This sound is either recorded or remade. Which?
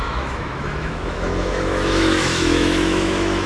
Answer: remade